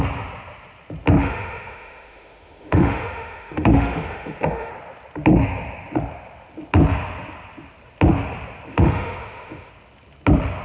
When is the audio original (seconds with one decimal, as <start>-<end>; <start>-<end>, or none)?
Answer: 0.0-1.2; 4.7-8.7; 9.7-10.6